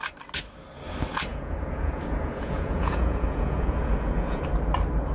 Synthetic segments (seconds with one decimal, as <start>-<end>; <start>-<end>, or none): 1.3-4.4

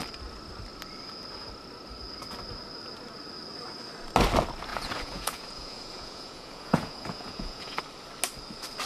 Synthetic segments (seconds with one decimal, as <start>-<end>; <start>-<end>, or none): 4.7-7.8

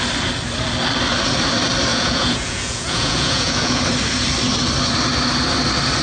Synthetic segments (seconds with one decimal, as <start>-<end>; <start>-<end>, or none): 1.9-3.8

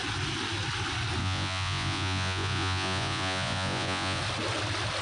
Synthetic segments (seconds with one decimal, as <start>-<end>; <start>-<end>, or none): 1.2-4.2